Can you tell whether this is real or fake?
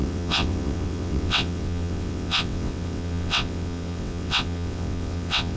fake